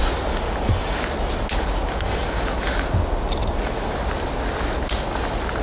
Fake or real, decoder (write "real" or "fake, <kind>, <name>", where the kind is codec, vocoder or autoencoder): real